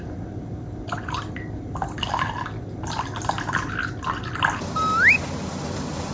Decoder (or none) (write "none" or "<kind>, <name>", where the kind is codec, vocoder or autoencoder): none